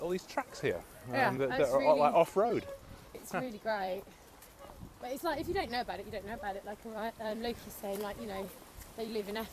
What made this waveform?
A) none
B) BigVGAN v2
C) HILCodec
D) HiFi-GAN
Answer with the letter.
B